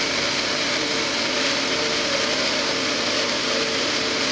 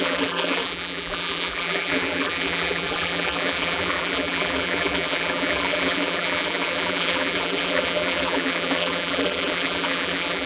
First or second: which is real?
first